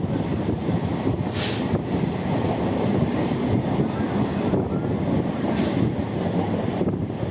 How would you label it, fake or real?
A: real